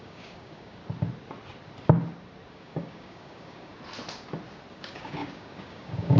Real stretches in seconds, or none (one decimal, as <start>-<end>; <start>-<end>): 0.8-2.5; 3.7-4.7